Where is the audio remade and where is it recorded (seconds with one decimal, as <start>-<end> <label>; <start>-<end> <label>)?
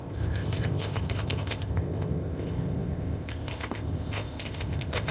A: 0.0-5.1 remade